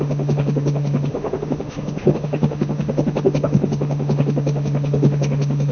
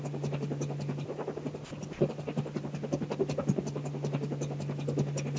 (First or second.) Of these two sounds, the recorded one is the second